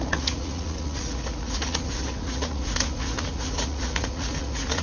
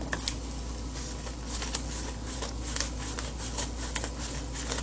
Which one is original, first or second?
second